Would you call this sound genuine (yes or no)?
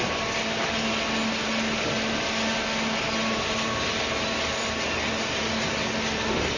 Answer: yes